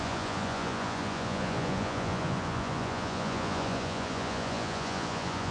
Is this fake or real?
fake